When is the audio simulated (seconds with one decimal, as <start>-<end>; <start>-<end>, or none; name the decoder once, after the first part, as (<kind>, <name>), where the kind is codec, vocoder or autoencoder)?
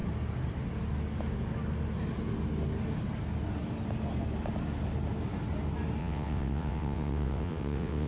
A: 6.0-8.1 (vocoder, WaveNeXt)